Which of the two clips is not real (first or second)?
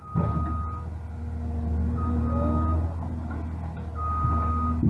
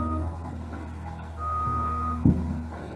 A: second